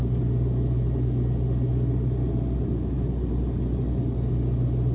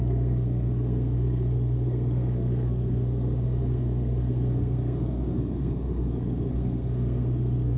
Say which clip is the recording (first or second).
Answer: first